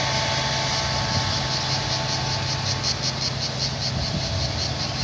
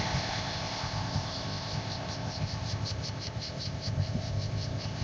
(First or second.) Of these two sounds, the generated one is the second